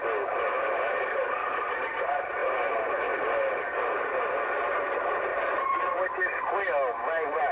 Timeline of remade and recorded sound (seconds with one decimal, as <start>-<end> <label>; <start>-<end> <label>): 0.0-7.5 recorded